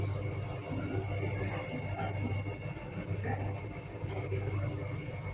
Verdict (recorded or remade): recorded